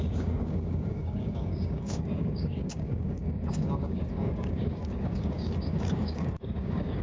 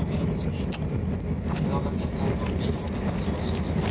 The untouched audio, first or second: second